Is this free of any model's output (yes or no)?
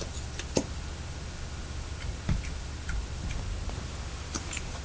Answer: yes